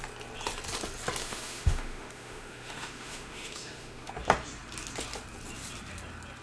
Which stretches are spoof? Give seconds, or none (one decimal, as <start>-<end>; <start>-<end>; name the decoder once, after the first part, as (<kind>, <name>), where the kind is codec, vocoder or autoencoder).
1.2-4.1 (autoencoder, DAC-VAE)